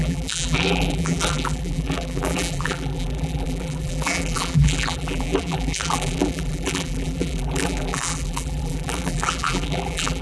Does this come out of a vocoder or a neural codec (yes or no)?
yes